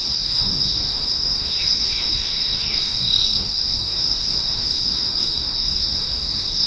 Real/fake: fake